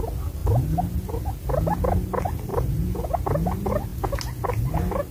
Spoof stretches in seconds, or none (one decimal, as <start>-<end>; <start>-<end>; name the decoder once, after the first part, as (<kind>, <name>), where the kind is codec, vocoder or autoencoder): 2.5-3.1 (vocoder, BigVGAN v2)